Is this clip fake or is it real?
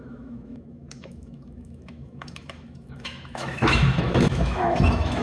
fake